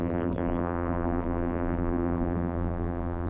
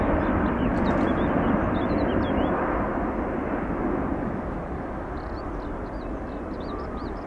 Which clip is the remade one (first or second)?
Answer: first